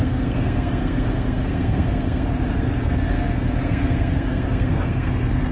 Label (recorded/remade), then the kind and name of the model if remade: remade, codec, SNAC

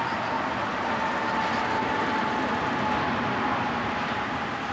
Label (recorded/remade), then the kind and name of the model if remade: recorded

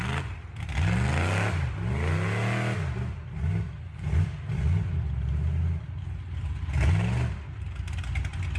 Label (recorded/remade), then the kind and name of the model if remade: recorded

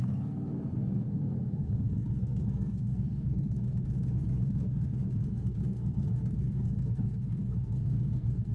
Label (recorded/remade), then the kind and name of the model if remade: remade, codec, SNAC